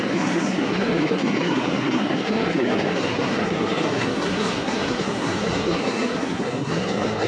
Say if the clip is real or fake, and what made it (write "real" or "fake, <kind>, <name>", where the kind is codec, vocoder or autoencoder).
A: fake, codec, SNAC